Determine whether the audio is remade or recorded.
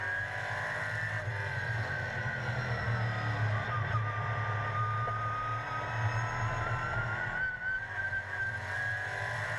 recorded